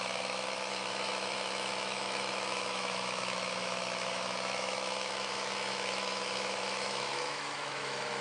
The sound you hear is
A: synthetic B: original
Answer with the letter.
A